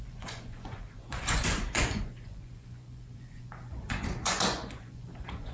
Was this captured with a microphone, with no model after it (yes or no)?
no